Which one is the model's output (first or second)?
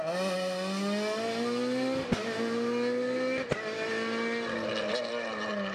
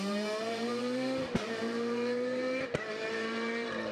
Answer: second